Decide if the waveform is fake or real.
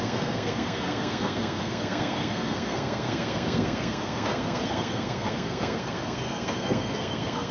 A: fake